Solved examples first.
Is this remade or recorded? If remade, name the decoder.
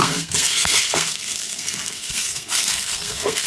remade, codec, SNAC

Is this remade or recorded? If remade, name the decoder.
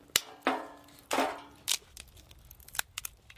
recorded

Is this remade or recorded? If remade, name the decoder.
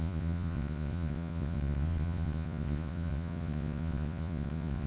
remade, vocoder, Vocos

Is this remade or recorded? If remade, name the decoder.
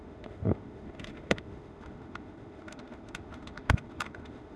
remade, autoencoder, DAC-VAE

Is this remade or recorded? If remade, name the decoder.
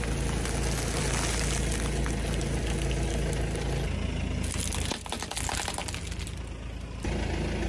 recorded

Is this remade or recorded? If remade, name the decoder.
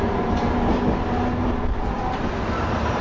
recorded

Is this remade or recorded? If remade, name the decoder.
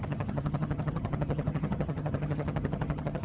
remade, vocoder, HiFi-GAN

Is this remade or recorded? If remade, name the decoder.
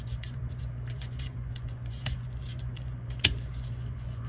remade, vocoder, Vocos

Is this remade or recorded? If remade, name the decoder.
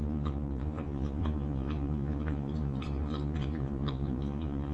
remade, vocoder, Vocos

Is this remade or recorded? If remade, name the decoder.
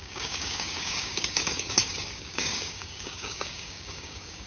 remade, codec, DAC